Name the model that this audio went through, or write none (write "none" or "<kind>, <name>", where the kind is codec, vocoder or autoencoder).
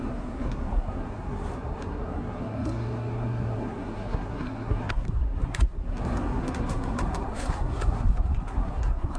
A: codec, SNAC